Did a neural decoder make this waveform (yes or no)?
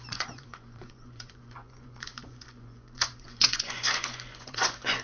yes